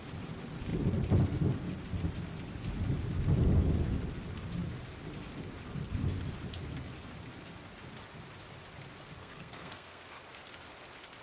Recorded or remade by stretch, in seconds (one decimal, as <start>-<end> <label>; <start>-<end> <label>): 0.0-9.2 recorded; 9.2-10.2 remade; 10.2-11.2 recorded